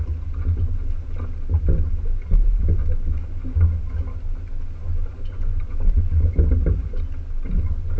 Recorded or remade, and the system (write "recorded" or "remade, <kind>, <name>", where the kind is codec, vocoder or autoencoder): recorded